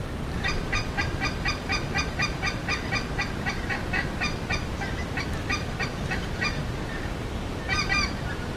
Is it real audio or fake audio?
fake